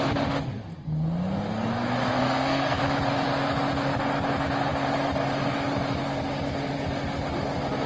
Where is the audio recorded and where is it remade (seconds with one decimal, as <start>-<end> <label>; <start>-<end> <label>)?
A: 0.0-2.2 recorded; 2.2-2.8 remade; 2.8-7.9 recorded